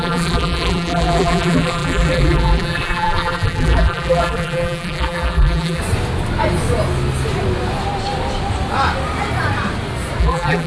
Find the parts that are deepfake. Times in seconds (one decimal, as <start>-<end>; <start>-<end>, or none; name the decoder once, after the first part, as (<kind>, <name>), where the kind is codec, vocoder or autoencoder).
0.0-5.8 (vocoder, BigVGAN v2); 10.2-10.7